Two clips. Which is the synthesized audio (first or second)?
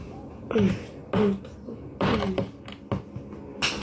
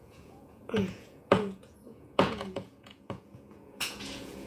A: second